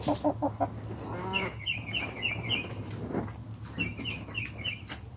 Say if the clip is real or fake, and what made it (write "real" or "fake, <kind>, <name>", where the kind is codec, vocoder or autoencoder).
real